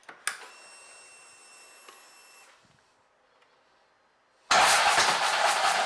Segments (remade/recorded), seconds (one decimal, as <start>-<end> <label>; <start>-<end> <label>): 0.0-5.9 recorded